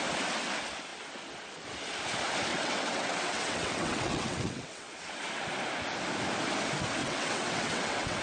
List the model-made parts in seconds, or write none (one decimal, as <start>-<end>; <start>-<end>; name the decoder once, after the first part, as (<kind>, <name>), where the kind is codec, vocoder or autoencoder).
2.5-4.9 (vocoder, WaveNeXt); 7.0-8.2